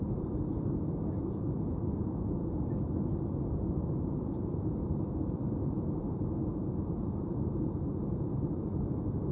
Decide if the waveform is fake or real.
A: fake